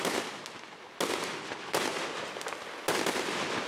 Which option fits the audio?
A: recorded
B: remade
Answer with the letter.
A